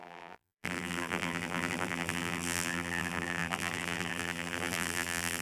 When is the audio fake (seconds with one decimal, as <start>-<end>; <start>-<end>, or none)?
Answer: 0.0-5.4